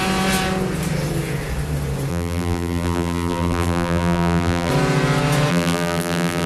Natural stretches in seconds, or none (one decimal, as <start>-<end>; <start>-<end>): 0.0-2.1; 4.7-5.5